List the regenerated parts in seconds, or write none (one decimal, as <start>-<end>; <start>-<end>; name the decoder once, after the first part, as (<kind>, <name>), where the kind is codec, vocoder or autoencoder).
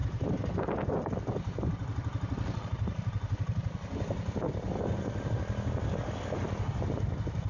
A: none